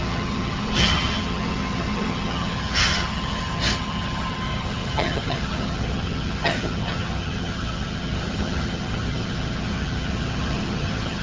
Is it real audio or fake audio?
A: fake